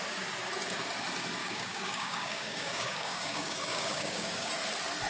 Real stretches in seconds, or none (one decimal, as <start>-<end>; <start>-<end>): 0.0-1.4; 4.5-5.1